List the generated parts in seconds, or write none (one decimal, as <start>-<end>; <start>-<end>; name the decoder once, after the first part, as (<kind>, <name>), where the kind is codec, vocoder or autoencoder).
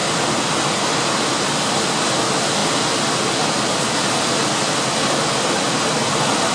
none